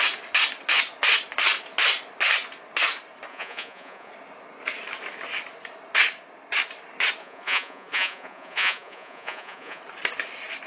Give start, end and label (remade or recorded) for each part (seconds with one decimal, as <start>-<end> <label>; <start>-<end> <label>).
0.0-3.3 recorded; 3.3-4.1 remade; 4.1-7.2 recorded; 7.2-9.8 remade; 9.8-10.7 recorded